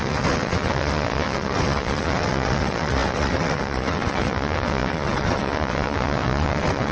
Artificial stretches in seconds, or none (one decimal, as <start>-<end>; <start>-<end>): 0.0-6.9